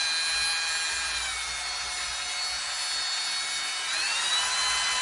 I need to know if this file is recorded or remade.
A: recorded